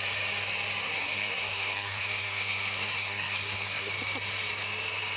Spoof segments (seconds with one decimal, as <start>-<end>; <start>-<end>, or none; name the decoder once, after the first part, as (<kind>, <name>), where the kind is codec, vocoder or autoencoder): 0.8-3.9 (codec, SNAC)